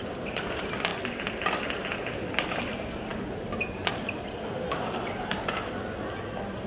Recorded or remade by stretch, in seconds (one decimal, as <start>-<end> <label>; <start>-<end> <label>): 0.0-6.7 recorded